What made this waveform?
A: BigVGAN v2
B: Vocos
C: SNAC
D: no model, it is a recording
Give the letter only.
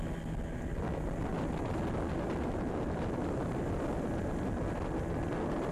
D